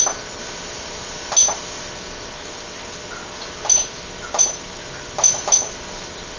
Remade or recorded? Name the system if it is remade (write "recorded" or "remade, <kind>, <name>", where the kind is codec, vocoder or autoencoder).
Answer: recorded